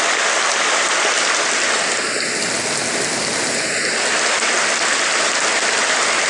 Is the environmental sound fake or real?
real